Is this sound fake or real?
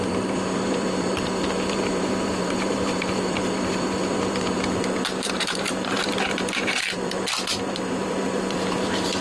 fake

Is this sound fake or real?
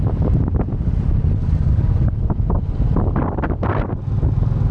real